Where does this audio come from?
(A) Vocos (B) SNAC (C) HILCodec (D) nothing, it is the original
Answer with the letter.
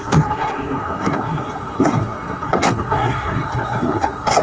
B